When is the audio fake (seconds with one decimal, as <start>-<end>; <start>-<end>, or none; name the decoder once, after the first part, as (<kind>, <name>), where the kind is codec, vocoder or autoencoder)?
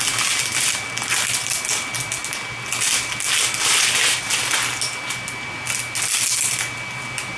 none